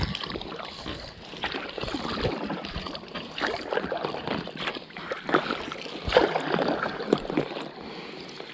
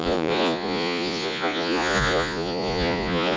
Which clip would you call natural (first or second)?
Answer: first